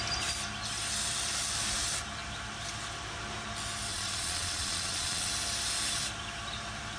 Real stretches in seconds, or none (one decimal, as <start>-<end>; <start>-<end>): 0.0-3.9; 5.3-7.0